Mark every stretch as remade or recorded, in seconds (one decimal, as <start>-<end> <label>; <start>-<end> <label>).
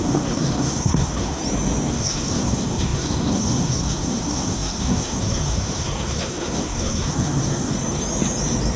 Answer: 0.0-1.4 remade; 1.4-1.9 recorded; 1.9-7.7 remade; 7.7-8.8 recorded